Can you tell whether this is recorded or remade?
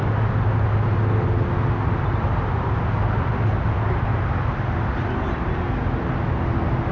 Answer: recorded